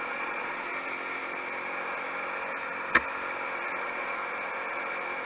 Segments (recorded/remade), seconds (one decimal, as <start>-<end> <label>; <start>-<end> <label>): 0.0-0.7 remade; 0.7-3.8 recorded; 3.8-4.2 remade; 4.2-5.3 recorded